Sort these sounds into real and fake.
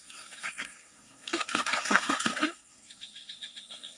fake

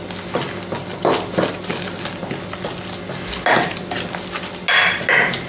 real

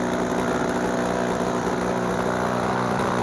real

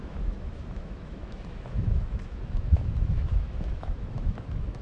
fake